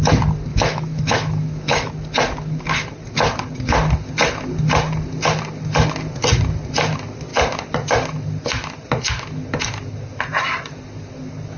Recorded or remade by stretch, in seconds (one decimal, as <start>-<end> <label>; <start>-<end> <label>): 0.0-0.5 recorded; 0.5-1.9 remade; 1.9-11.6 recorded